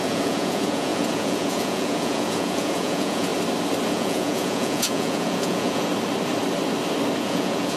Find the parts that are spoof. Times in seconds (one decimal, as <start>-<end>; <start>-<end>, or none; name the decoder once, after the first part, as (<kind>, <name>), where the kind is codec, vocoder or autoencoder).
0.0-3.3 (vocoder, Vocos); 3.9-5.9; 7.2-7.8